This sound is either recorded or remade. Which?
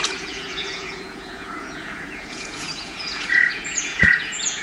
remade